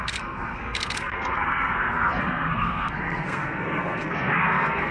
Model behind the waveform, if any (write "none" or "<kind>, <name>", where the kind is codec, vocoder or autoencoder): codec, SNAC